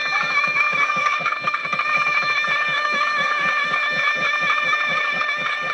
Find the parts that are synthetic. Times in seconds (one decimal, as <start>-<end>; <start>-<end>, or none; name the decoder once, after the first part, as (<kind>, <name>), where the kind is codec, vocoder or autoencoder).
0.0-1.6 (codec, DAC); 2.5-3.8; 4.6-5.7